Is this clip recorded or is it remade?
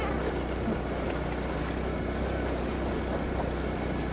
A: recorded